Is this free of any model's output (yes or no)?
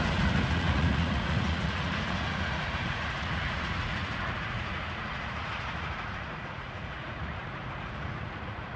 no